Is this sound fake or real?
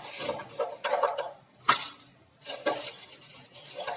fake